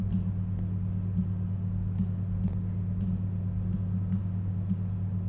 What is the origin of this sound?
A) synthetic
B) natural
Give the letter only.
B